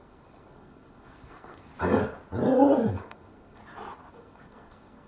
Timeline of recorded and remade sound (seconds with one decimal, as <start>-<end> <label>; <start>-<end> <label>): 0.0-1.7 remade; 1.7-2.9 recorded; 2.9-3.6 remade; 3.6-4.1 recorded; 4.1-5.1 remade